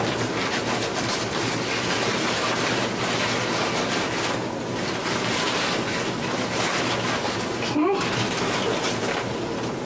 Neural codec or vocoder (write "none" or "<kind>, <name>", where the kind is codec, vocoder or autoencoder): none